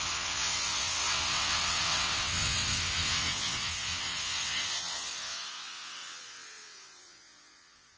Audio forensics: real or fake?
fake